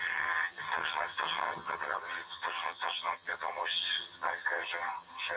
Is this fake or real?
fake